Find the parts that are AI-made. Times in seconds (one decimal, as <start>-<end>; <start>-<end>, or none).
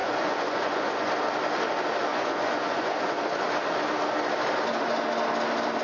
0.0-1.1; 2.1-3.2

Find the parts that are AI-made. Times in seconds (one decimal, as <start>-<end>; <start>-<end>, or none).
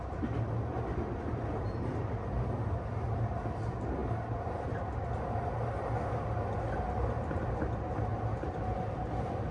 none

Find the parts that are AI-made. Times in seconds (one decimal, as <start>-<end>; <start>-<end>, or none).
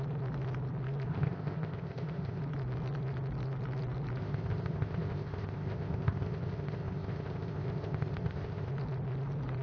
1.1-2.4; 4.2-8.7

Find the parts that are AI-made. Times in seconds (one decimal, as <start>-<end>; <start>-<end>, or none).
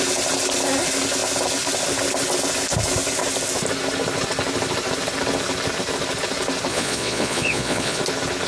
6.7-8.0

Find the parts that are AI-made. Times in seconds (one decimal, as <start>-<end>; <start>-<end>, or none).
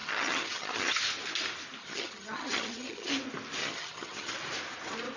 0.0-1.0; 1.8-3.1; 3.6-4.3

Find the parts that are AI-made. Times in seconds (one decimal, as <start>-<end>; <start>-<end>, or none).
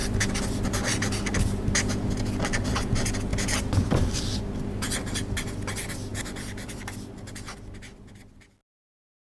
none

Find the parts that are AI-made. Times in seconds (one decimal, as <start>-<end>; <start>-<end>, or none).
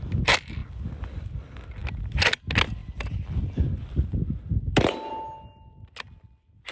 none